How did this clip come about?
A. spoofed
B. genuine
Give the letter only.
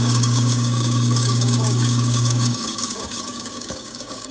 A